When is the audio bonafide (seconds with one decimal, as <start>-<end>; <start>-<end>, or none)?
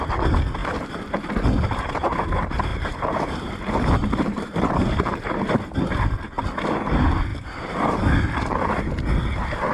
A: 0.0-0.6; 1.3-2.7; 5.4-9.7